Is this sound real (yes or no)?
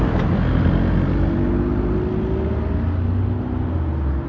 yes